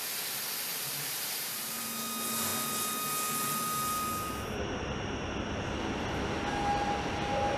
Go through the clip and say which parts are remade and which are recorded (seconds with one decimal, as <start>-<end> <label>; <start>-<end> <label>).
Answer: 0.0-0.7 recorded; 0.7-1.8 remade; 1.8-7.6 recorded